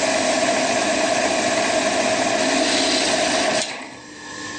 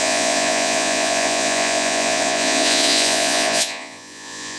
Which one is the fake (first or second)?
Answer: second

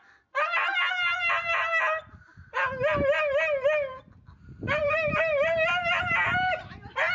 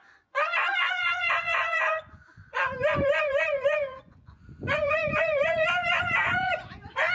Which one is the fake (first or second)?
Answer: second